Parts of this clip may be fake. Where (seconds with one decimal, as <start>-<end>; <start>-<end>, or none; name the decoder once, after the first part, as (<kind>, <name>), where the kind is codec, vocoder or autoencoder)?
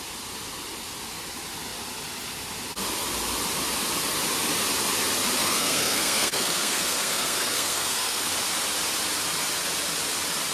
5.4-8.3 (codec, SNAC)